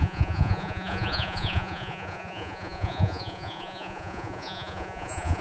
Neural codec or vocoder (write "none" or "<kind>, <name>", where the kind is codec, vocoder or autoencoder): vocoder, Vocos